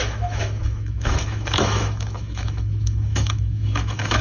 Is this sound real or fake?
fake